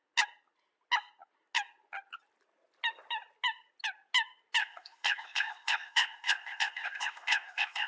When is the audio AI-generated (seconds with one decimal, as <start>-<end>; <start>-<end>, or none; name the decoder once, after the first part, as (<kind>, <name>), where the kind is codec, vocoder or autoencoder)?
4.6-7.9 (codec, ZipCodec)